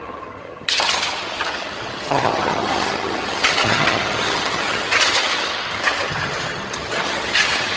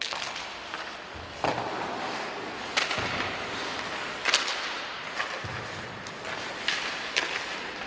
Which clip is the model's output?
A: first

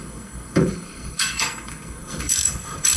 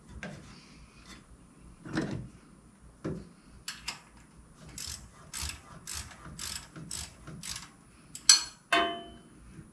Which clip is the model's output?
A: first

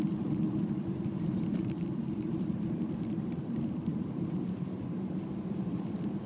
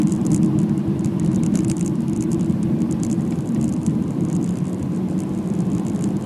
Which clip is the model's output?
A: first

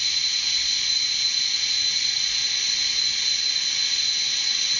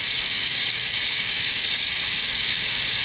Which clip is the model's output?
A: second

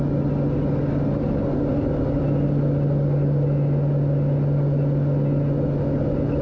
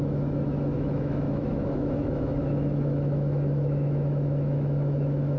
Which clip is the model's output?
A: second